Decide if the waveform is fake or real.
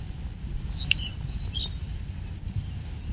real